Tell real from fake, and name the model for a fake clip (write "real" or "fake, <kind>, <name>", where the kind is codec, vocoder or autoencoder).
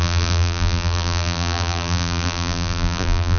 fake, vocoder, BigVGAN v2